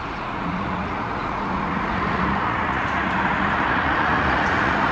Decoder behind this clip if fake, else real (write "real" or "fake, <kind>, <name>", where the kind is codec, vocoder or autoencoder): fake, vocoder, Vocos